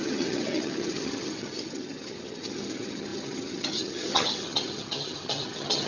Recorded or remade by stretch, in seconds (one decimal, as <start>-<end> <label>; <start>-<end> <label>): 0.0-5.9 remade